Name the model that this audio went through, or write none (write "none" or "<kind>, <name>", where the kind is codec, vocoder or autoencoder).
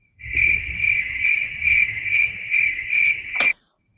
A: none